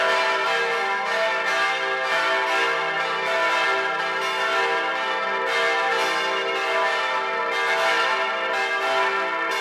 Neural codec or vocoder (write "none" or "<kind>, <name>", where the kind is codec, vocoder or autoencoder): none